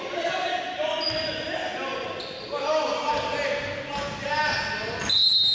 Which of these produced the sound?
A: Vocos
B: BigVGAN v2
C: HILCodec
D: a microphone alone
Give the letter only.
D